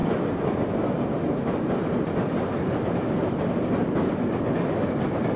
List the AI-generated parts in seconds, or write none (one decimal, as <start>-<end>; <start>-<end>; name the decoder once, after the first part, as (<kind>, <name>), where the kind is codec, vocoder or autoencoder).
none